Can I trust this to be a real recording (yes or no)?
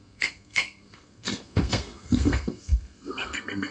no